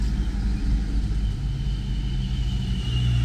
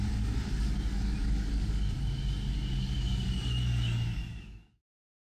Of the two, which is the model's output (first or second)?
second